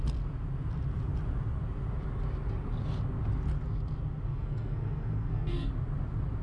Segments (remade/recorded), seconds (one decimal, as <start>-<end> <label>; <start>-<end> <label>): 0.0-4.3 recorded; 4.3-5.7 remade; 5.7-6.4 recorded